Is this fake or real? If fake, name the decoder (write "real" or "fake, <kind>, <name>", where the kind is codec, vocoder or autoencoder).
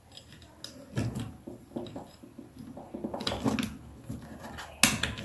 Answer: real